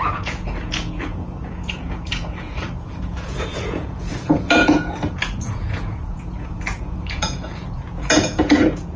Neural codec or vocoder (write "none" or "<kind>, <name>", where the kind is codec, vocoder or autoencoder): vocoder, Vocos